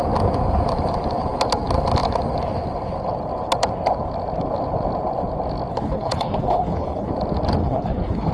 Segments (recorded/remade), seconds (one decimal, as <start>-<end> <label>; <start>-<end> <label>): 0.0-5.7 recorded; 5.7-7.1 remade; 7.1-7.6 recorded; 7.6-8.3 remade